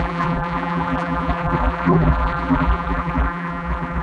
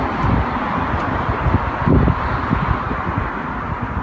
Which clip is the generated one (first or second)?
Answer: first